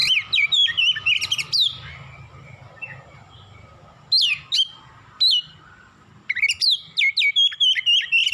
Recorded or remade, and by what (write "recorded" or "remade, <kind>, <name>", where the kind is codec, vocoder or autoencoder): recorded